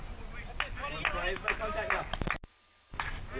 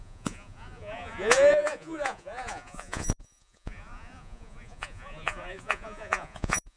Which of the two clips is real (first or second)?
first